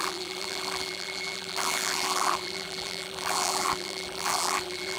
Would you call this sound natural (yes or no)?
no